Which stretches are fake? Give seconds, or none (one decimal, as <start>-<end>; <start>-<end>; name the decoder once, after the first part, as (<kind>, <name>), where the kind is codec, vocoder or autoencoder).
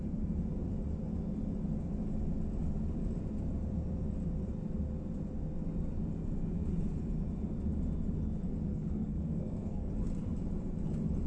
8.7-9.9 (codec, SNAC)